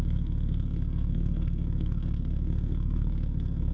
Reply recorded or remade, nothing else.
remade